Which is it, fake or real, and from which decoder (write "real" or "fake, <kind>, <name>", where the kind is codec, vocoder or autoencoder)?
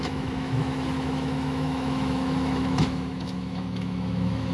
fake, autoencoder, DAC-VAE